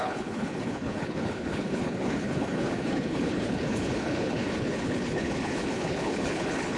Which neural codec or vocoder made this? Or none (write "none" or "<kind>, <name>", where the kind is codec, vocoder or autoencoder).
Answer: codec, HILCodec